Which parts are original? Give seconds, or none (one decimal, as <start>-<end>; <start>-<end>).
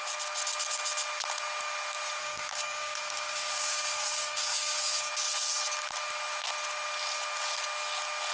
0.0-2.2; 5.1-8.3